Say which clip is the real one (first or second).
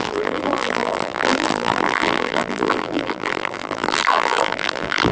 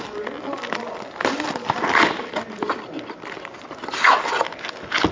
second